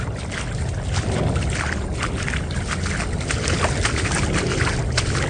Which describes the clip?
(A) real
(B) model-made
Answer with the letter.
A